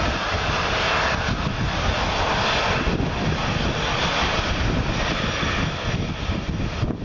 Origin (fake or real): real